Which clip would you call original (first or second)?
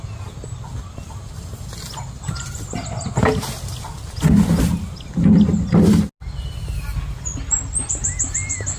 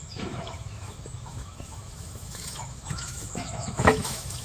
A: first